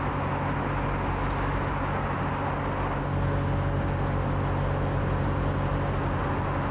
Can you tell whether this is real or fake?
real